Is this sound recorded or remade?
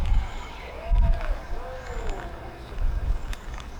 remade